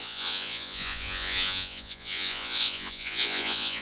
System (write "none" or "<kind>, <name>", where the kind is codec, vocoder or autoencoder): vocoder, Vocos